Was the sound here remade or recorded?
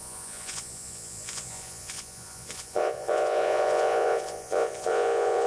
remade